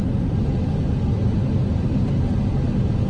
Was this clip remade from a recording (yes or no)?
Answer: no